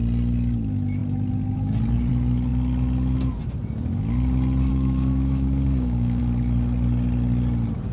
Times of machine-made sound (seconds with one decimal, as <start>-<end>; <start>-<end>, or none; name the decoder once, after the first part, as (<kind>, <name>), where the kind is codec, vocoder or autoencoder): 4.7-6.2 (codec, DAC)